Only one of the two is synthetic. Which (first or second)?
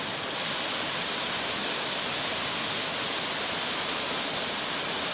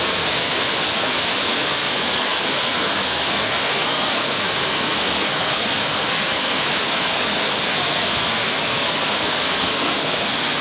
second